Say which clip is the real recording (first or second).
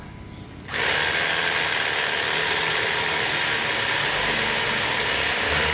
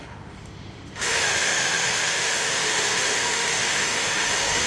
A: first